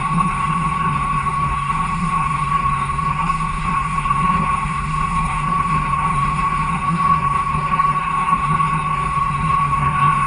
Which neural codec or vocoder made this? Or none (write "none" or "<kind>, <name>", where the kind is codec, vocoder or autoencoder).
codec, SNAC